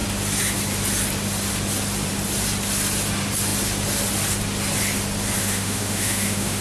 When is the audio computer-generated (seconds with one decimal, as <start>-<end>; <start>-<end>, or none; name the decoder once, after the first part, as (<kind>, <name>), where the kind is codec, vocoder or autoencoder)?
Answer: 5.4-6.6 (autoencoder, DAC-VAE)